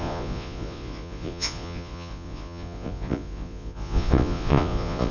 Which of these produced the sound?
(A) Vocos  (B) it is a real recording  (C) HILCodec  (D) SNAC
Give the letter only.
A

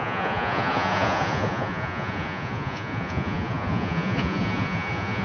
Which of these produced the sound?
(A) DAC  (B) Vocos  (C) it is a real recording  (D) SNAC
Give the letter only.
B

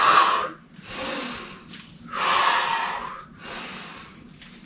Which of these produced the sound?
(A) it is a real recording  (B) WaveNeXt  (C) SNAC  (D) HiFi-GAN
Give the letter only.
A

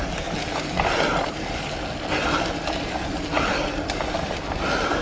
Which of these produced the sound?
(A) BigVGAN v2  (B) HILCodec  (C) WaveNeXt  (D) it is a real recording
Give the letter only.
D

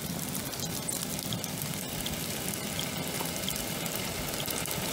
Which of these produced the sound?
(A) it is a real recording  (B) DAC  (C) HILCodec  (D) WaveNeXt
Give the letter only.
A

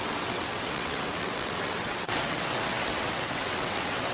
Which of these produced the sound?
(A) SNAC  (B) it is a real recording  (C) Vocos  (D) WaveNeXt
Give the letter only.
D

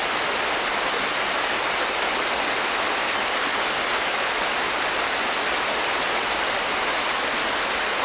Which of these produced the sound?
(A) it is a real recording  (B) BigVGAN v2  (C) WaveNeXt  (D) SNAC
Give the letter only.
A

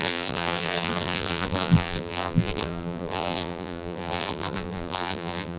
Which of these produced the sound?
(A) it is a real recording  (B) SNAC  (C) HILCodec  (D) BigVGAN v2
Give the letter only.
D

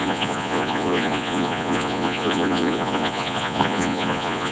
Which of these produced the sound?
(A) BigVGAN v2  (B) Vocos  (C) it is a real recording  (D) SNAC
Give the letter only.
B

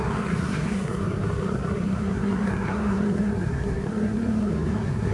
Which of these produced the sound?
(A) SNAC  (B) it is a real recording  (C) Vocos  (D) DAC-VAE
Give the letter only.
A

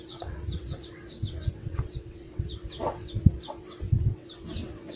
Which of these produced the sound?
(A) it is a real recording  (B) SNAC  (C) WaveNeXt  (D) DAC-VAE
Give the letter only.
C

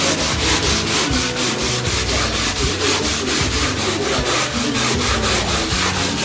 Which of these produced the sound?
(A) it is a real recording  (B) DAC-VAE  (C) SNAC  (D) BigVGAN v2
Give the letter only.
A